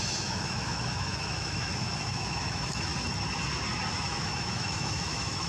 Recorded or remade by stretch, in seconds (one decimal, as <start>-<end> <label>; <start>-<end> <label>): 0.0-2.9 remade; 2.9-3.9 recorded; 3.9-5.5 remade